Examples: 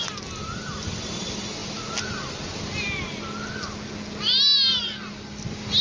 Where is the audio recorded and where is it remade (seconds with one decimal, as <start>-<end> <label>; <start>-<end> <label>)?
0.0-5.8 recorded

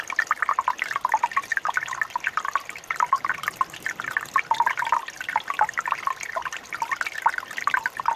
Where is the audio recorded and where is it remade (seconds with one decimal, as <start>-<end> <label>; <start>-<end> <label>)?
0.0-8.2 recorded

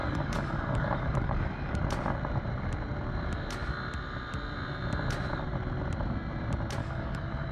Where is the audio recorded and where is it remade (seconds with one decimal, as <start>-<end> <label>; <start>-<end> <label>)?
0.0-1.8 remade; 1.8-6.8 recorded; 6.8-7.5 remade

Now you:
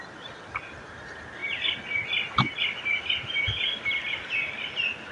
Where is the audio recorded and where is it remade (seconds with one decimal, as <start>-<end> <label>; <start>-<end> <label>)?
0.0-5.1 recorded

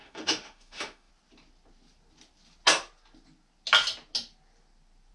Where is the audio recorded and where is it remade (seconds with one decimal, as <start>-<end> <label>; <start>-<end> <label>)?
0.0-1.1 remade; 1.1-5.1 recorded

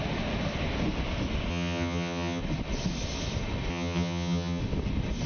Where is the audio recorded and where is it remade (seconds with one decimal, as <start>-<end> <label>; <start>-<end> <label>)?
0.0-1.5 recorded; 1.5-2.4 remade; 2.4-3.7 recorded; 3.7-4.6 remade; 4.6-5.3 recorded